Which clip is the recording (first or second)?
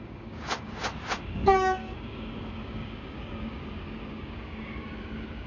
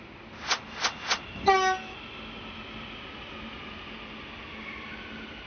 second